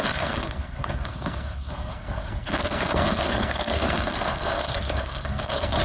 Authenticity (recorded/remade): remade